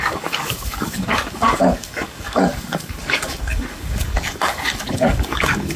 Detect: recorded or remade remade